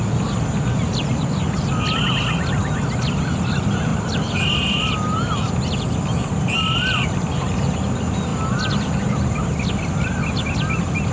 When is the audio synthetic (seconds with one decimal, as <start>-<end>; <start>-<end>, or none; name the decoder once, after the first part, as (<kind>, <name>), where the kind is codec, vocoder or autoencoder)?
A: 8.3-9.0 (vocoder, BigVGAN v2)